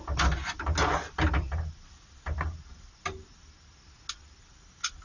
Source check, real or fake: real